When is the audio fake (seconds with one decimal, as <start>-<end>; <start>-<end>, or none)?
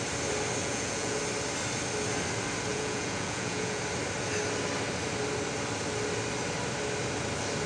0.6-1.2; 2.7-3.8